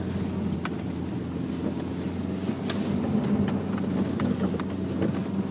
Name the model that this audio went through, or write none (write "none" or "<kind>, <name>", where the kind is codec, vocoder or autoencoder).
none